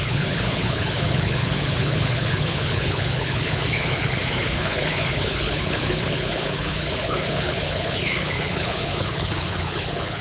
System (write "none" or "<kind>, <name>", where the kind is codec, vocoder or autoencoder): codec, HILCodec